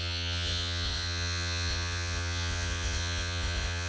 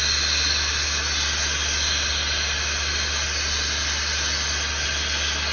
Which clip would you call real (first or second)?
second